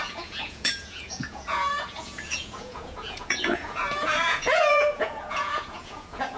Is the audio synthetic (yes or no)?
yes